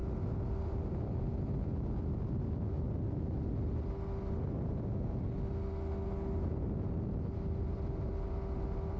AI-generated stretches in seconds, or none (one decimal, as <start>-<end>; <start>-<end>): none